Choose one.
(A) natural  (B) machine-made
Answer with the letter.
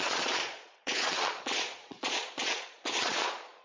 B